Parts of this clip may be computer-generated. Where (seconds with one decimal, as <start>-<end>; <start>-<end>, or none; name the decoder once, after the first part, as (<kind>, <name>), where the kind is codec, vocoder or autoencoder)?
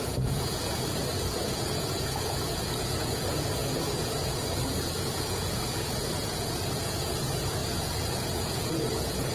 0.0-9.3 (vocoder, Vocos)